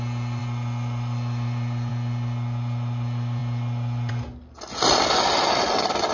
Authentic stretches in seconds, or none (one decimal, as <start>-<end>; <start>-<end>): 0.0-0.4; 1.9-6.1